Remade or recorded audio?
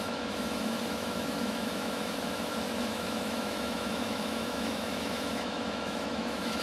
remade